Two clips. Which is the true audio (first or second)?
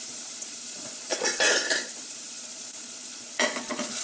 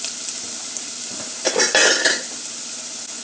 second